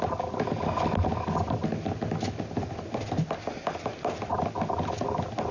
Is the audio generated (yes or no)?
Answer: no